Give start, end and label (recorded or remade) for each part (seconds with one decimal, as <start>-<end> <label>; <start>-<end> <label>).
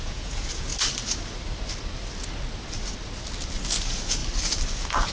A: 0.0-0.7 remade; 0.7-3.8 recorded; 3.8-4.2 remade; 4.2-5.1 recorded